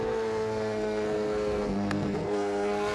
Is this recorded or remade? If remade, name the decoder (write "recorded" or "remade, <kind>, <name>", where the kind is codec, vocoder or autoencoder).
remade, codec, SNAC